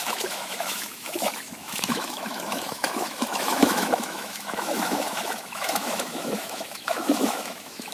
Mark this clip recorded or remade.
remade